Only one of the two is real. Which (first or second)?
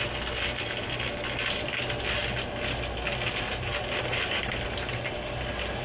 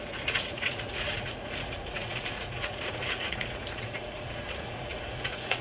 first